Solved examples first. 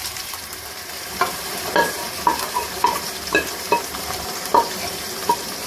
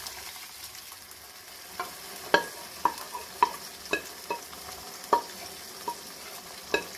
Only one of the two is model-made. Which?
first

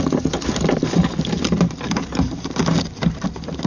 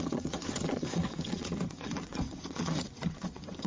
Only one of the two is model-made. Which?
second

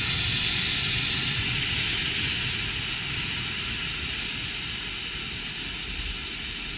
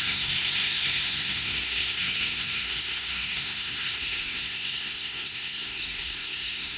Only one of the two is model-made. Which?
second